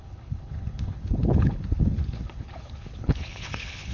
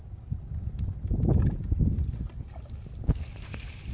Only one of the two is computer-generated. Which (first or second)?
first